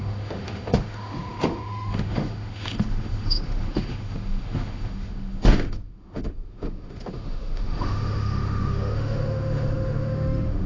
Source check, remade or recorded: remade